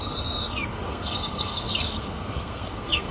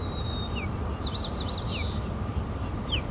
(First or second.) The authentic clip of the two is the second